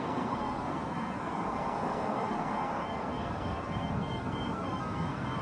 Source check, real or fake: fake